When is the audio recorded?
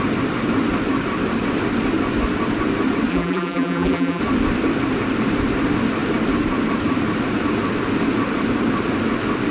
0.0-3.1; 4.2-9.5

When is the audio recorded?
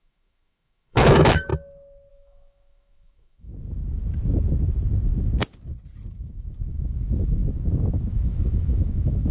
1.5-2.1; 3.5-6.1; 7.4-8.1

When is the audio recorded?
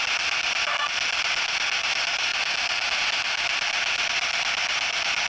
0.0-5.3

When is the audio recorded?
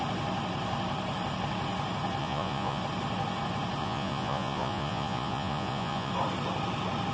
0.0-2.2; 2.8-3.8; 6.1-7.1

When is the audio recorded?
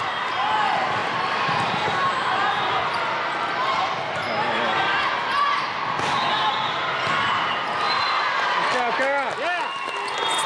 0.0-1.0; 2.3-10.5